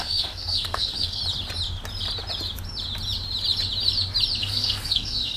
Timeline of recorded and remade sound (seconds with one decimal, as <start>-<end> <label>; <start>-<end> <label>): 0.0-1.2 remade; 1.2-4.4 recorded; 4.4-5.4 remade